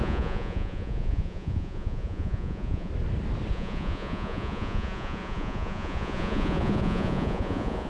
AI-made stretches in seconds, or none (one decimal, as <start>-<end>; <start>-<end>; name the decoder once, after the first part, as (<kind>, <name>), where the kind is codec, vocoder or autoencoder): 0.0-2.9 (vocoder, Vocos); 3.5-7.9